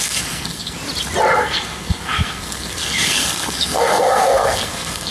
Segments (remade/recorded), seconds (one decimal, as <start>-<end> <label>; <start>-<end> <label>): 0.0-0.8 remade; 0.8-1.4 recorded; 1.4-5.1 remade